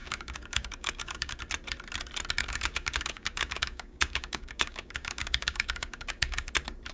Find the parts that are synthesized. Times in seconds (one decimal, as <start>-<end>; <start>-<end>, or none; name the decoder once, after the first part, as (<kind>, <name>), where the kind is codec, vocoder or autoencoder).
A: 0.0-1.4 (codec, DAC); 2.4-6.5